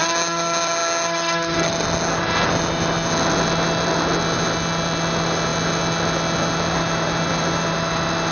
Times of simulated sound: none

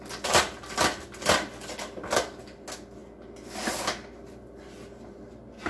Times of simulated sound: none

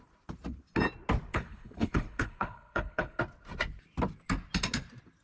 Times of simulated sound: 1.3-3.2 (codec, HILCodec)

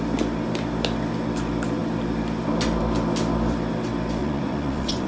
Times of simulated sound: 4.2-5.1 (vocoder, Vocos)

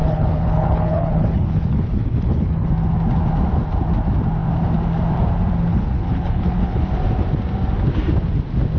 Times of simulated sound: 0.0-2.7 (codec, HILCodec); 5.7-6.9

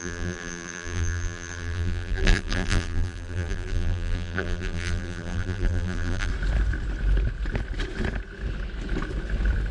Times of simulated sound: 0.0-6.3 (vocoder, BigVGAN v2)

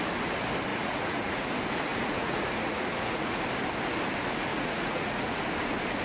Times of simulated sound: 0.7-1.5 (vocoder, Vocos); 1.9-3.4; 4.5-5.4

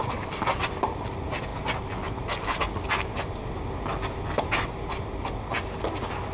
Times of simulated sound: none